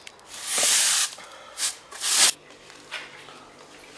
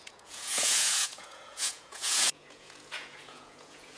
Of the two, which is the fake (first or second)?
second